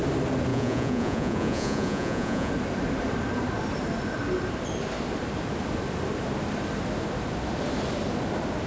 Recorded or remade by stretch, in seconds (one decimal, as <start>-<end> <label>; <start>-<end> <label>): 0.0-0.5 recorded; 0.5-2.5 remade; 2.5-8.7 recorded